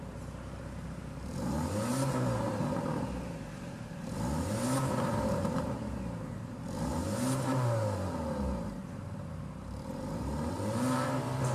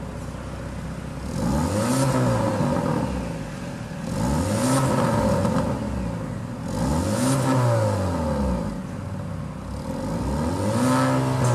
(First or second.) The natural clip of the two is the second